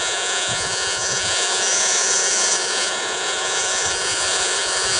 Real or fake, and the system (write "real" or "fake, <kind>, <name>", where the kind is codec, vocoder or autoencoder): fake, vocoder, Vocos